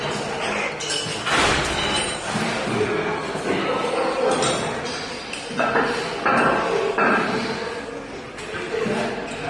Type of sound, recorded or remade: recorded